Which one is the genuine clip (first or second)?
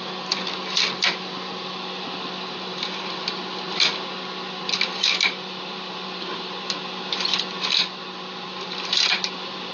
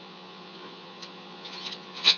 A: first